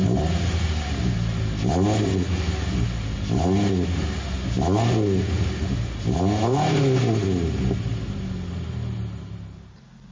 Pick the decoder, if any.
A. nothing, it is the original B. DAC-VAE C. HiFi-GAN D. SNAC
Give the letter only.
A